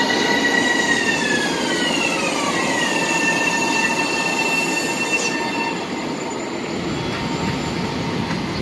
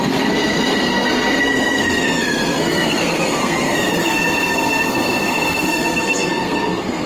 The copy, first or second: second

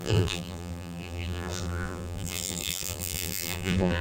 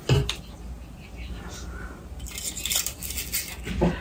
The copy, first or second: first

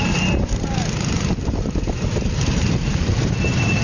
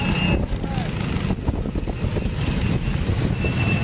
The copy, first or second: first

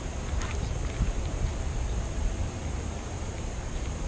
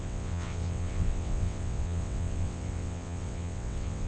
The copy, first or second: second